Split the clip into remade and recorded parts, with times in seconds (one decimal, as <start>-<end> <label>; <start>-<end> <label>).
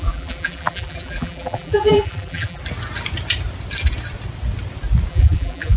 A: 0.0-2.6 remade; 2.6-5.1 recorded; 5.1-5.8 remade